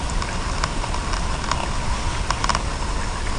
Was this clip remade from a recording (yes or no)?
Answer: no